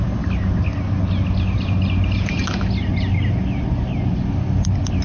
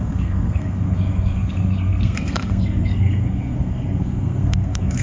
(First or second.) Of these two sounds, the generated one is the second